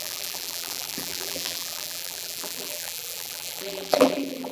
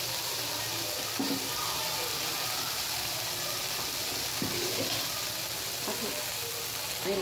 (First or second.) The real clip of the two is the second